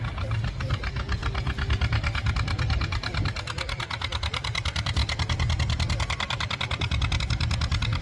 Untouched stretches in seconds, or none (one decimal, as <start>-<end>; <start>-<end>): 1.2-2.3; 5.0-7.2